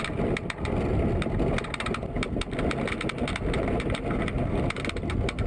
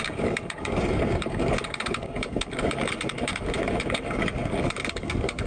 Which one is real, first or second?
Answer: first